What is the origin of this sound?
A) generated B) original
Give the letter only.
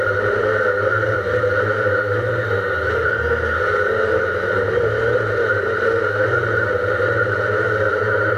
B